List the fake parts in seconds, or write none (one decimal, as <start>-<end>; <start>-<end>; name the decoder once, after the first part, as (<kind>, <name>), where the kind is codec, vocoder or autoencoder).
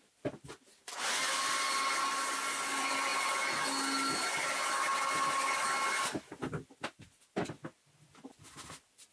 none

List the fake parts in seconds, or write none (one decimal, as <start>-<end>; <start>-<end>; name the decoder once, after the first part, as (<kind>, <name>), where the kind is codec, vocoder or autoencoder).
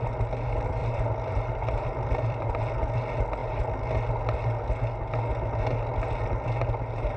0.8-2.6 (vocoder, BigVGAN v2)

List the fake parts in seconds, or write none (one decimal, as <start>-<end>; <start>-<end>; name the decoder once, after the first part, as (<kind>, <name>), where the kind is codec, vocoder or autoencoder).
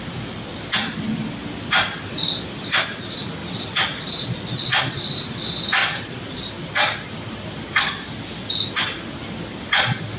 3.4-4.1 (vocoder, BigVGAN v2); 5.8-9.6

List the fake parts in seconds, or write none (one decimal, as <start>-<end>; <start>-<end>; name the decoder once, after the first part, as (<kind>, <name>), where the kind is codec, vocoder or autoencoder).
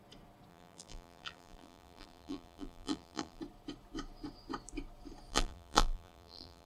0.5-3.4 (vocoder, BigVGAN v2); 5.3-6.7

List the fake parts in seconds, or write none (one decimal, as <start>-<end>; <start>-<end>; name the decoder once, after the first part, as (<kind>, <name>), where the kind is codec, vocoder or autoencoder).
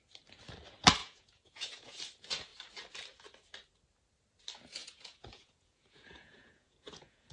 1.0-2.0 (vocoder, Vocos); 4.8-7.3